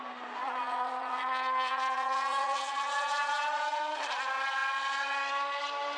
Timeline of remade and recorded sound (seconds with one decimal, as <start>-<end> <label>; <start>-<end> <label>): 0.0-0.4 recorded; 0.4-3.8 remade; 3.8-6.0 recorded